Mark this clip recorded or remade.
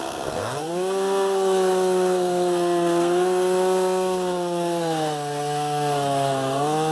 remade